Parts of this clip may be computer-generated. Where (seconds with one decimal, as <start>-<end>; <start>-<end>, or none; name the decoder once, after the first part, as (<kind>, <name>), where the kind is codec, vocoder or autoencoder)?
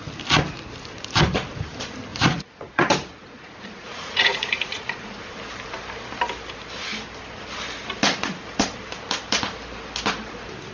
2.1-5.3 (vocoder, Vocos)